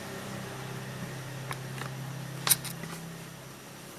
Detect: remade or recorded recorded